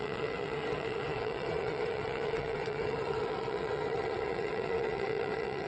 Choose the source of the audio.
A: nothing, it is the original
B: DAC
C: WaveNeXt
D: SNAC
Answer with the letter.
C